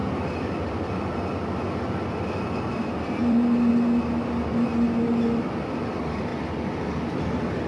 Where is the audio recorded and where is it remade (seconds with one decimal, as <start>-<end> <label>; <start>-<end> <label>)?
0.0-1.7 remade; 1.7-3.2 recorded; 3.2-3.7 remade; 3.7-7.7 recorded